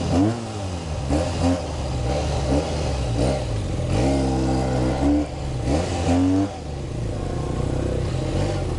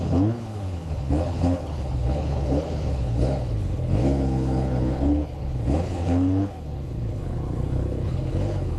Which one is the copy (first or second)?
second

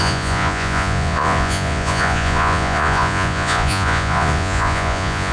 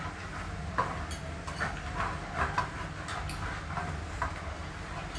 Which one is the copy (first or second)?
first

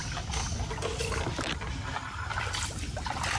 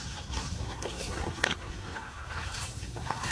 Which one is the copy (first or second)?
second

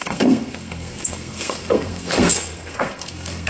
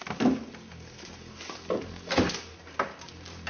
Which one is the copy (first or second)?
first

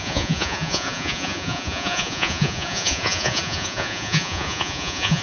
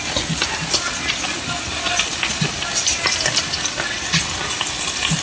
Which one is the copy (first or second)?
first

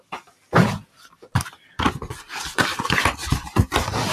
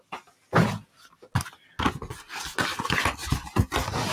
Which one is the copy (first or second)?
first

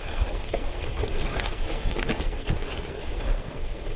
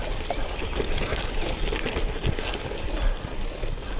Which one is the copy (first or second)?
first